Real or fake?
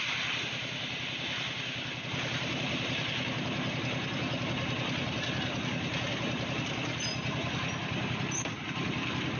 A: real